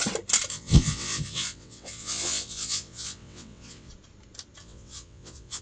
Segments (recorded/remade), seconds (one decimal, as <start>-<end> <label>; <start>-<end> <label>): 0.0-0.5 recorded; 0.5-3.9 remade; 3.9-4.6 recorded; 4.6-5.6 remade